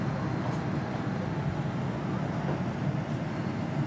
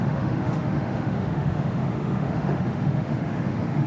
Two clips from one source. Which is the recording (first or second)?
first